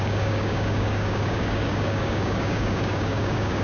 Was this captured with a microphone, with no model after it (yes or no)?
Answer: no